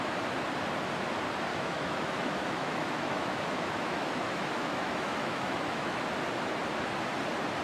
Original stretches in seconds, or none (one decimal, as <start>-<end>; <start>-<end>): 0.0-1.5; 6.0-7.6